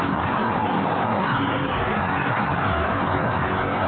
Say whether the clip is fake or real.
fake